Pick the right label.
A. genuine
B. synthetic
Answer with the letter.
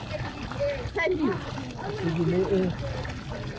A